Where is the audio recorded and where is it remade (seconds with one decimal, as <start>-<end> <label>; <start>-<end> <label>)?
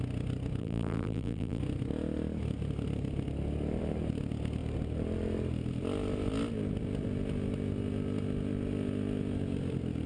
0.0-0.6 recorded; 0.6-1.6 remade; 1.6-10.1 recorded